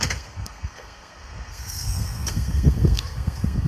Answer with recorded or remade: remade